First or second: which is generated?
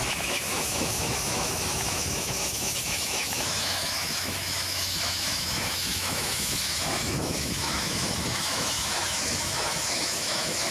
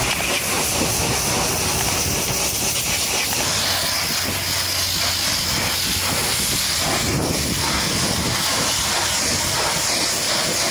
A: first